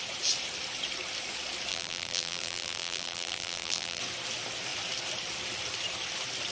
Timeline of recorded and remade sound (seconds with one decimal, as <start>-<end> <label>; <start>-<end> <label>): 0.0-1.7 recorded; 1.7-4.0 remade; 4.0-6.5 recorded